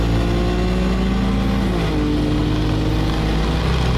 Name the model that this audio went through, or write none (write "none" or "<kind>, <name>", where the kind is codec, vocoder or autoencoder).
none